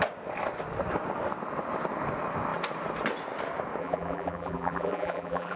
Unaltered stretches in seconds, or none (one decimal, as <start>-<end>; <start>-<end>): 0.0-3.8